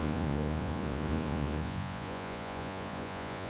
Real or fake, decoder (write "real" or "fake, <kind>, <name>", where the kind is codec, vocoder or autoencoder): fake, vocoder, Vocos